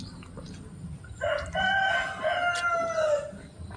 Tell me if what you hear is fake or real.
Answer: real